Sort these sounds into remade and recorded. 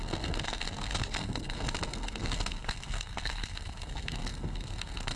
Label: remade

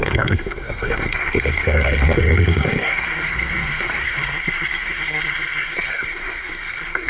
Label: remade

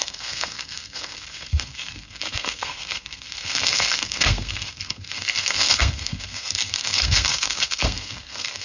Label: remade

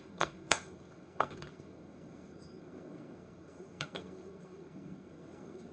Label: remade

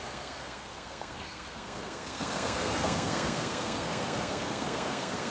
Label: remade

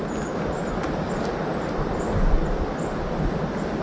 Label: recorded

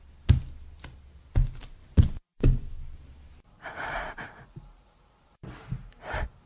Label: recorded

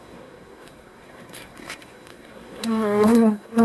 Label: remade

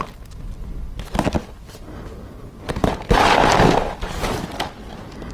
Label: recorded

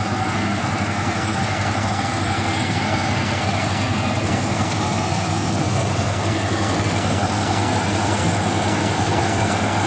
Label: remade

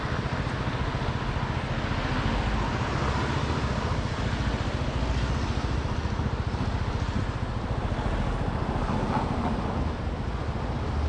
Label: recorded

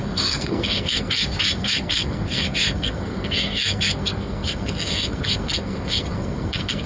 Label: remade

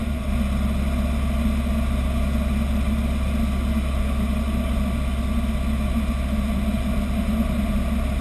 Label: recorded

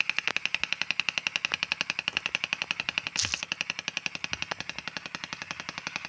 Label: recorded